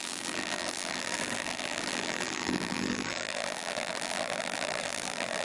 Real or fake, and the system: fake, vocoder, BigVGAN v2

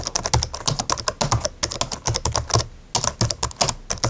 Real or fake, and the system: real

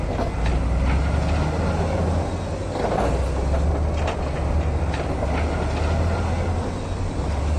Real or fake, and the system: real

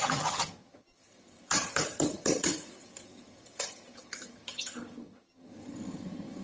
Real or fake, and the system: fake, vocoder, HiFi-GAN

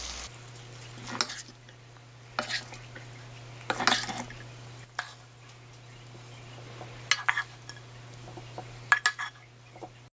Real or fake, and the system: real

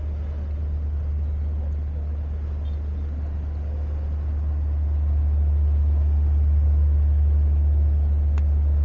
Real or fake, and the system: real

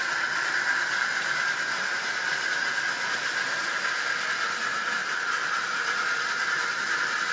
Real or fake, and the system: real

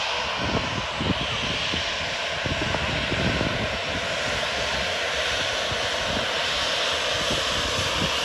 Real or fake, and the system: real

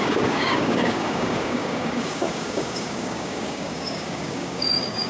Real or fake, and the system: fake, codec, DAC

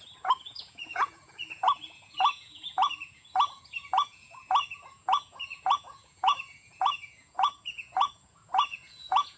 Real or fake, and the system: fake, vocoder, Vocos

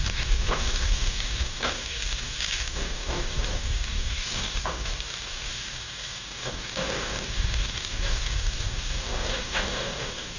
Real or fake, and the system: fake, codec, DAC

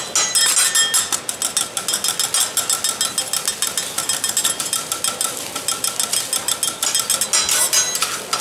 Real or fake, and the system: real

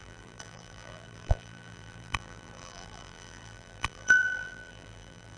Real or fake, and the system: fake, vocoder, BigVGAN v2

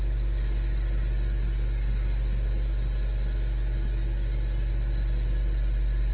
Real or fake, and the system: real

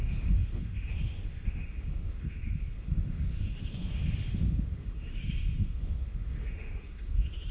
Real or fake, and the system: fake, autoencoder, DAC-VAE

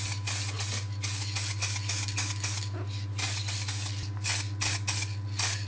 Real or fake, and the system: real